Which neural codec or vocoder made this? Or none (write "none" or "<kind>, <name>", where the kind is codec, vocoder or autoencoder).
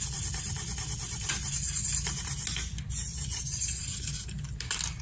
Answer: none